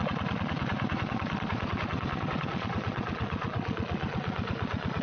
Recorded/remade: remade